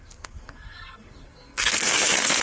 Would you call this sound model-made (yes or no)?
yes